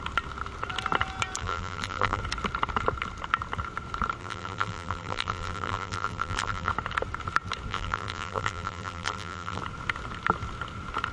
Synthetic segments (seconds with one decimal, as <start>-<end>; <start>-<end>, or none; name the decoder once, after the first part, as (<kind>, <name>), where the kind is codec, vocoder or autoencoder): 1.4-2.2 (vocoder, BigVGAN v2); 4.2-6.7; 7.7-9.6